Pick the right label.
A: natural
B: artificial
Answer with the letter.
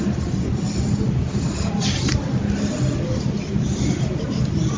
A